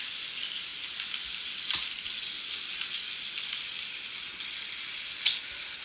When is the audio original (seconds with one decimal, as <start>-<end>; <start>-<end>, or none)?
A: 0.0-5.8